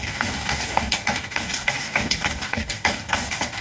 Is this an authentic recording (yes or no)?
no